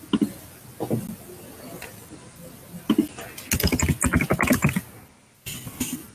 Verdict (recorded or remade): recorded